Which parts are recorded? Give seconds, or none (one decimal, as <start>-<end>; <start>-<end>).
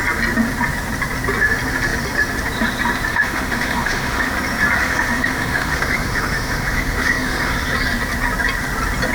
0.0-3.1; 4.3-4.8; 7.5-9.1